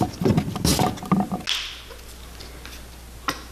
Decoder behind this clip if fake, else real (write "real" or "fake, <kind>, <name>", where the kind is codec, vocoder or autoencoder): real